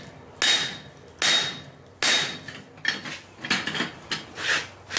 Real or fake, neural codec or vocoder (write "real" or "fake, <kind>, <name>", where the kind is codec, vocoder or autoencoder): real